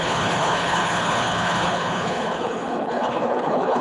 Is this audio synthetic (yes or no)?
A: yes